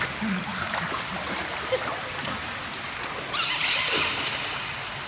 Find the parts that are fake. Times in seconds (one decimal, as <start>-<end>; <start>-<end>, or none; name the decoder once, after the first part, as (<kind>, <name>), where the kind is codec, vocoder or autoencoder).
none